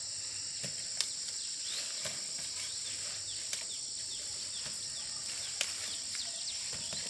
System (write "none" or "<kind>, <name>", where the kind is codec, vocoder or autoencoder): none